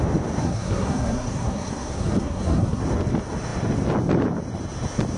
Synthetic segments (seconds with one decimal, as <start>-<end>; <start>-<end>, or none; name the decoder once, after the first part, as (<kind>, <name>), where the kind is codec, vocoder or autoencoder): 0.4-2.8 (codec, SNAC)